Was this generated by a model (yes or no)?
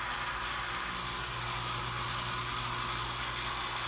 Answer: no